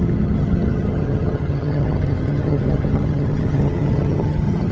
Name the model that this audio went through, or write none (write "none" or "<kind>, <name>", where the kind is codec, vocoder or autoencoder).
vocoder, HiFi-GAN